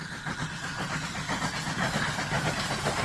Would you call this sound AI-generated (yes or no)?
no